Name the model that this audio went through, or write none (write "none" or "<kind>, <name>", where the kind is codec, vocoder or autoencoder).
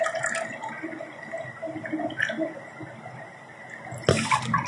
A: none